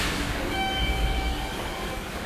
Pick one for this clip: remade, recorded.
remade